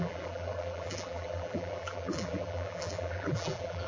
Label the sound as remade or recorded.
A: remade